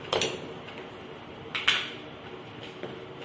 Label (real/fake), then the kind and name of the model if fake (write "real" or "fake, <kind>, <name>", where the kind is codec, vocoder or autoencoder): real